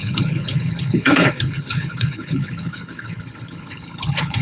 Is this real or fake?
fake